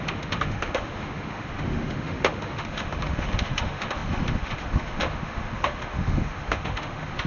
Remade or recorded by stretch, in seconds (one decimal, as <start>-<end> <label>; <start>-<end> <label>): 0.0-7.3 remade